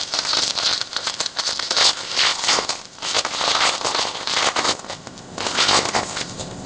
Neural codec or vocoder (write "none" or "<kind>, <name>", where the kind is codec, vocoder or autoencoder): codec, ZipCodec